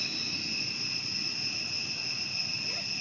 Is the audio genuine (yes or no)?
yes